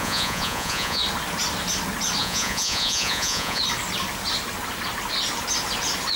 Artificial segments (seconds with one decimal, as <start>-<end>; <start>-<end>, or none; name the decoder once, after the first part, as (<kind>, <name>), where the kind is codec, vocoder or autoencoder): 0.0-1.0 (vocoder, Vocos); 2.2-3.6